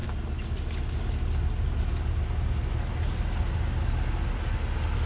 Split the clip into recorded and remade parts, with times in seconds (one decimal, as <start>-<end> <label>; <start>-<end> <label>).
0.0-5.1 recorded